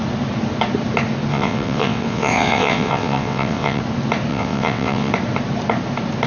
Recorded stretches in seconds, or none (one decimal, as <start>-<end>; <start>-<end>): 0.0-1.3; 3.8-4.3; 5.1-6.3